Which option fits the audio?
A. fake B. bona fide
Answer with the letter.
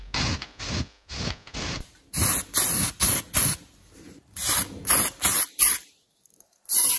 B